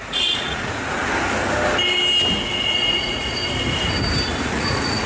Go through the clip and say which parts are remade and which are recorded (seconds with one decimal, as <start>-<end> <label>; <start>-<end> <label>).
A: 0.0-1.0 remade; 1.0-2.6 recorded; 2.6-3.4 remade; 3.4-4.4 recorded; 4.4-5.1 remade